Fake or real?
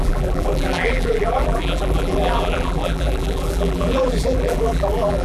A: fake